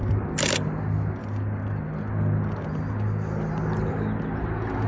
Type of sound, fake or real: real